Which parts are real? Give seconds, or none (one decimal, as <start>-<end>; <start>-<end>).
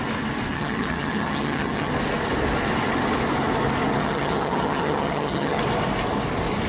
0.0-0.5; 1.9-4.0; 5.6-6.7